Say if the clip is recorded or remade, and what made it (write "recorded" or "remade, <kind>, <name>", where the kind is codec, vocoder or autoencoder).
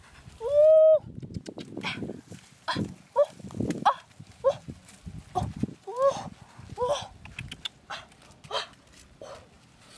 recorded